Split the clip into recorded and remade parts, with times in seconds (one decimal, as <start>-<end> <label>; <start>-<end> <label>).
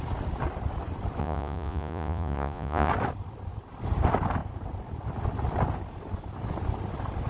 0.0-1.2 recorded; 1.2-2.9 remade; 2.9-7.3 recorded